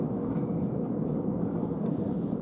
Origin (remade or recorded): remade